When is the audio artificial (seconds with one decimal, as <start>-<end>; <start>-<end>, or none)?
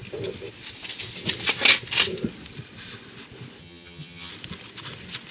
3.6-4.3